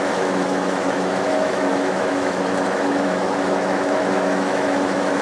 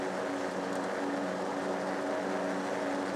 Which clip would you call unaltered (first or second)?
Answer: second